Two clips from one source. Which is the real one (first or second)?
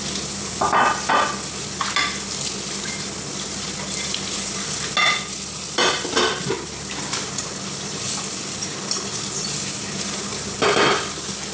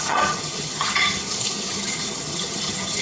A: first